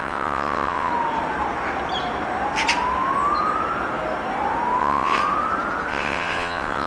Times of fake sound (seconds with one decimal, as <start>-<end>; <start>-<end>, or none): 0.0-0.9; 4.8-5.2; 5.9-6.9